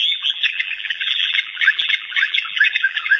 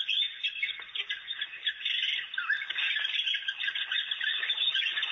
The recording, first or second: second